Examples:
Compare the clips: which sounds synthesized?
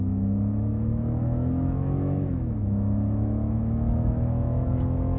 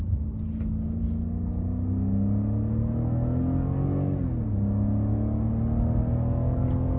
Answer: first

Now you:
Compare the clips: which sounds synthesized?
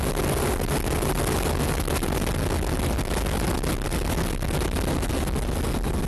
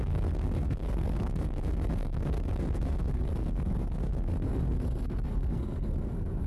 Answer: second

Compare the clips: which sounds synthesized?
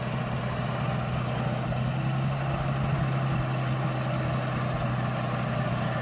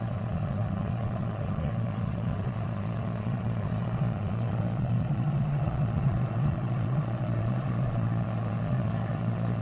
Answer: second